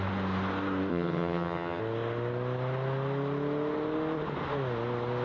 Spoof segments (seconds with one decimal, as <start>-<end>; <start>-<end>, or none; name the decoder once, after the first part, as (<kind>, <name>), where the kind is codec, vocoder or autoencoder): 0.9-1.8 (vocoder, HiFi-GAN)